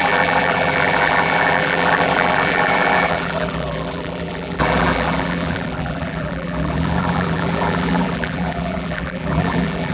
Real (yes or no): no